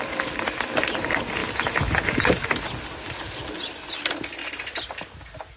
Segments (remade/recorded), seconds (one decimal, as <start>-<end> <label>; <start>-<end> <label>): 0.0-1.4 remade; 1.4-3.9 recorded; 3.9-4.4 remade; 4.4-5.6 recorded